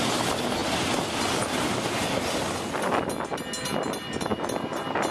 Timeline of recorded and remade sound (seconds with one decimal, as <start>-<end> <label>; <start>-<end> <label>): 0.0-5.1 recorded